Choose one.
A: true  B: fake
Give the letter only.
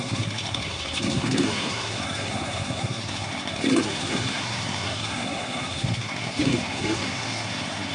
B